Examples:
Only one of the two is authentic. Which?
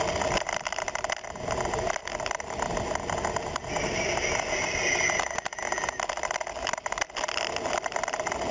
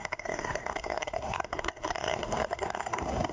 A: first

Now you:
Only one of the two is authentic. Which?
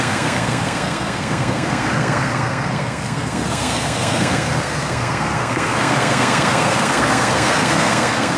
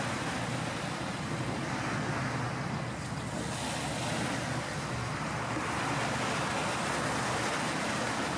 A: second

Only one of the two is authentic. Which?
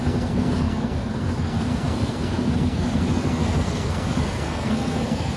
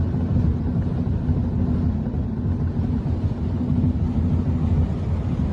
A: second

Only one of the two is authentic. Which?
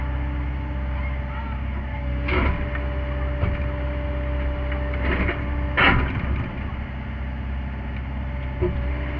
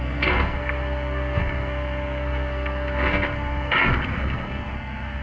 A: first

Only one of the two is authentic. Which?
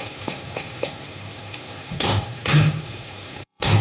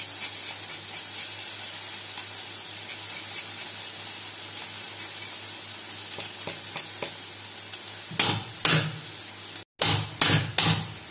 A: second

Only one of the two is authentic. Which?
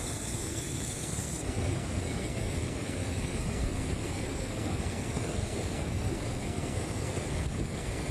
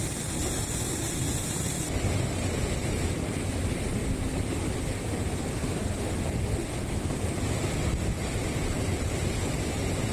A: second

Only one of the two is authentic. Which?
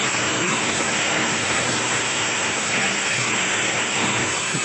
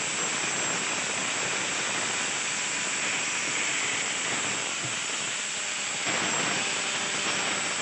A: second